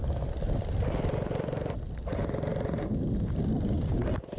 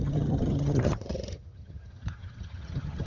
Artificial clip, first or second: second